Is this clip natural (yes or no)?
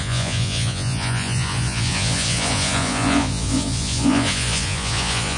no